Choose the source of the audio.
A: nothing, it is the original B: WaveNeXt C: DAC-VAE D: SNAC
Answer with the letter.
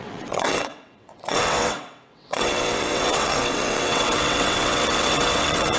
B